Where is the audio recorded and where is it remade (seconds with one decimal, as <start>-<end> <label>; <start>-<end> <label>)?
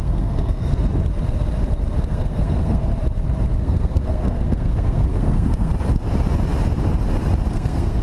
0.0-0.7 remade; 0.7-2.0 recorded; 2.0-2.9 remade; 2.9-3.6 recorded; 3.6-5.7 remade; 5.7-7.5 recorded; 7.5-8.0 remade